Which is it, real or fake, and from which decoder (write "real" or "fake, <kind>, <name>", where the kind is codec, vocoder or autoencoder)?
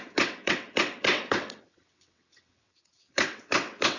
fake, vocoder, WaveNeXt